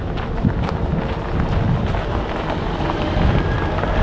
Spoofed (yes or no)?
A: no